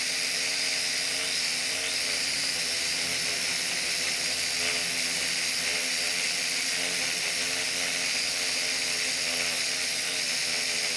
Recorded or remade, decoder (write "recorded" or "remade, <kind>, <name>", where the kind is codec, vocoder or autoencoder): recorded